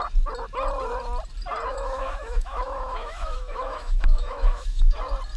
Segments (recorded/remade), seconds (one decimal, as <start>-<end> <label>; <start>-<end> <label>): 0.0-1.7 recorded; 1.7-4.9 remade; 4.9-5.4 recorded